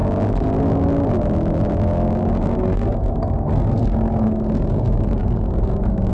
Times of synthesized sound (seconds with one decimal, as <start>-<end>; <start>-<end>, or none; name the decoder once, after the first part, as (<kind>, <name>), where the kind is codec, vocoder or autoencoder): 2.3-6.1 (codec, SNAC)